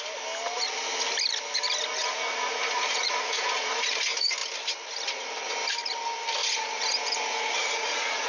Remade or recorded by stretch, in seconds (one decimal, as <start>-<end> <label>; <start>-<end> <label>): 0.0-2.0 recorded; 2.0-3.9 remade; 3.9-6.4 recorded; 6.4-8.3 remade